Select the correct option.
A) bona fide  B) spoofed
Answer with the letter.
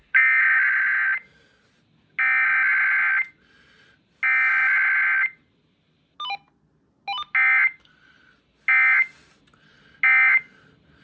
A